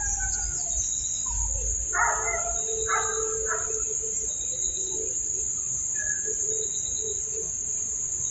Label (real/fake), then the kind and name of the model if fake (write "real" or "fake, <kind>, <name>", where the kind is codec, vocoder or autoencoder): real